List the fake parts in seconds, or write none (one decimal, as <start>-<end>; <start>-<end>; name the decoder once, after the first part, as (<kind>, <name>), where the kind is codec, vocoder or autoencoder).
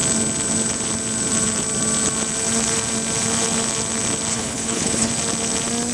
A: 4.3-5.1 (codec, HILCodec)